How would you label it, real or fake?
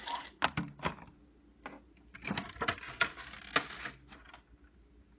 real